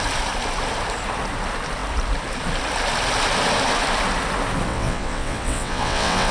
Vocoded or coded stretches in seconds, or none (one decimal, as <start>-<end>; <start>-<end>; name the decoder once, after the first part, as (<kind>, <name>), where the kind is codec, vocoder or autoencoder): 4.7-6.3 (vocoder, WaveNeXt)